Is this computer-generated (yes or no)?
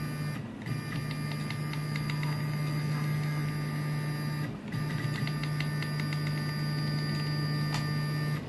no